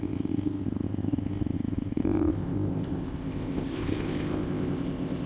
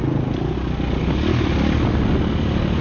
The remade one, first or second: first